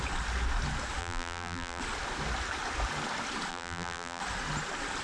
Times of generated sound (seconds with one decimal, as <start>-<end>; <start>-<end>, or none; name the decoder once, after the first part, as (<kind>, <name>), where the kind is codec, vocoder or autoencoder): 1.0-1.8 (vocoder, BigVGAN v2); 3.5-4.2